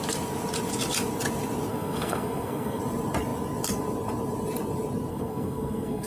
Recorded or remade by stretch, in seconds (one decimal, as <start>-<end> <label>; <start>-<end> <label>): 0.0-1.7 recorded; 1.7-2.8 remade; 2.8-5.1 recorded; 5.1-6.1 remade

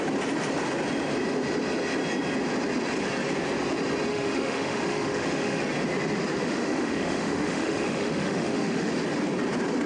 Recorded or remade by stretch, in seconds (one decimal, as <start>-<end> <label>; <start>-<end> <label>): 0.0-4.1 recorded; 4.1-5.6 remade; 5.6-6.4 recorded; 6.4-8.9 remade; 8.9-9.9 recorded

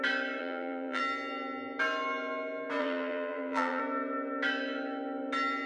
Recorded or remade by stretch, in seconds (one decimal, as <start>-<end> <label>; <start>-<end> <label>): 0.0-0.4 recorded; 0.4-1.0 remade; 1.0-2.8 recorded; 2.8-3.8 remade; 3.8-5.7 recorded

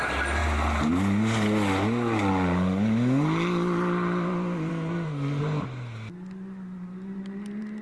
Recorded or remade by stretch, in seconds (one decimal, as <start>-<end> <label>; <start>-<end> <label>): 0.0-4.7 recorded; 4.7-5.4 remade; 5.4-7.8 recorded

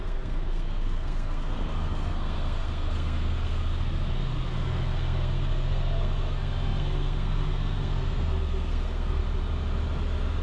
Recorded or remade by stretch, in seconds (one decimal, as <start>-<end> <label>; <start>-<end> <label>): 0.0-9.2 remade; 9.2-10.4 recorded

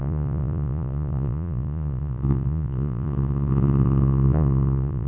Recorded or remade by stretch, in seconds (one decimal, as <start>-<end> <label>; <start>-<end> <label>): 0.0-5.1 remade

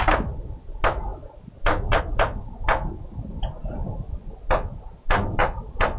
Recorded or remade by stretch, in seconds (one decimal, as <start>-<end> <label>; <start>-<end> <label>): 0.0-6.0 recorded

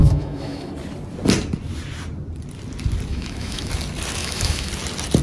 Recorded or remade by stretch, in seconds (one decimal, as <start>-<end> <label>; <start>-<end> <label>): 0.0-0.7 remade; 0.7-3.1 recorded; 3.1-3.7 remade; 3.7-4.2 recorded; 4.2-4.7 remade; 4.7-5.2 recorded